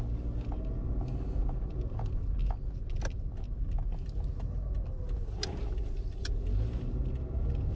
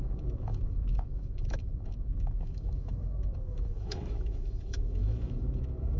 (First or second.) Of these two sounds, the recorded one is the first